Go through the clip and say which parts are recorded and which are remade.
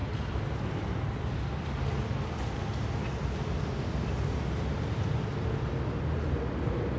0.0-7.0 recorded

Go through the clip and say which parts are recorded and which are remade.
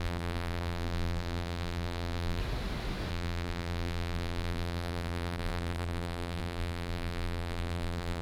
0.0-2.4 remade; 2.4-3.1 recorded; 3.1-8.2 remade